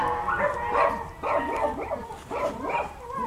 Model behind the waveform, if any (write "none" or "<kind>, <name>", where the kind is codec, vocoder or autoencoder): none